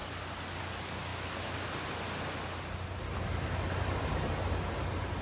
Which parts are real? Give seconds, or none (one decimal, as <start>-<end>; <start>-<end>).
0.0-5.2